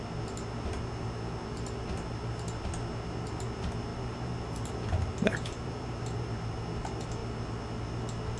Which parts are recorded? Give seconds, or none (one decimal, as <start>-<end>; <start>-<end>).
0.0-3.9; 6.6-8.4